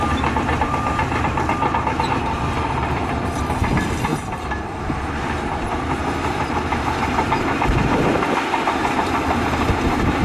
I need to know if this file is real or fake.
fake